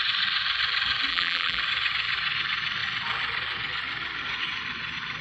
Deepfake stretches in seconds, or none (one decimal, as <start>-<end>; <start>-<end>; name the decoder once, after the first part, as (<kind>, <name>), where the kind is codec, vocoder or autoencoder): 1.1-1.6 (vocoder, BigVGAN v2)